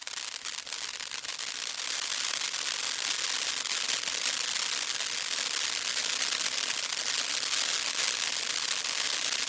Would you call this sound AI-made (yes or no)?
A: no